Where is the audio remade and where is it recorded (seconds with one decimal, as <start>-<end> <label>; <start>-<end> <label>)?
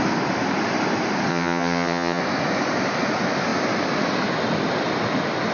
0.0-1.3 recorded; 1.3-2.2 remade; 2.2-5.5 recorded